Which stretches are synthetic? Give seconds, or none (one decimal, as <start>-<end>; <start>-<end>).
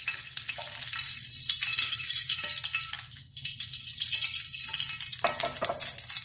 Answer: 1.7-2.4